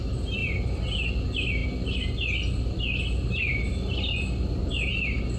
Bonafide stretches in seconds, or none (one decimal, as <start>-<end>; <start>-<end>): 0.0-5.4

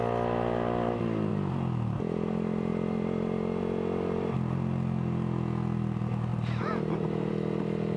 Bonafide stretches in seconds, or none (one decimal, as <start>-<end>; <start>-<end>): 0.0-1.3; 2.0-2.7; 3.6-6.3; 7.3-8.0

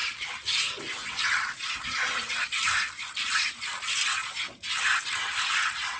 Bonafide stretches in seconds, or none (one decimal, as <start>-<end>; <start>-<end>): 3.6-6.0

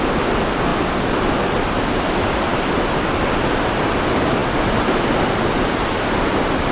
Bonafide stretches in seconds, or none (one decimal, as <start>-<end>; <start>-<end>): 2.5-4.0

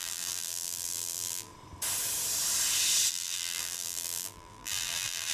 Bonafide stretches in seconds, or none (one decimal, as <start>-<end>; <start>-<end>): 1.5-3.1

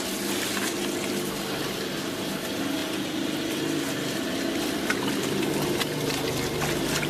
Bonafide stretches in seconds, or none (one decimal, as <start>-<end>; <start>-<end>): 0.0-7.1